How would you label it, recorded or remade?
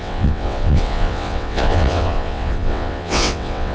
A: remade